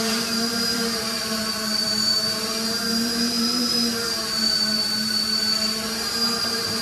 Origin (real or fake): fake